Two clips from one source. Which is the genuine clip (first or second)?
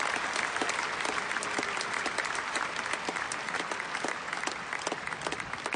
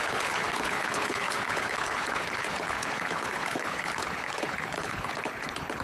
first